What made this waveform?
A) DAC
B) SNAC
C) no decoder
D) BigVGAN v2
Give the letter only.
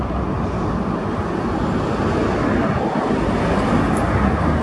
C